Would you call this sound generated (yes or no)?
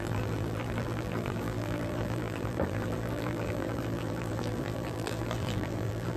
yes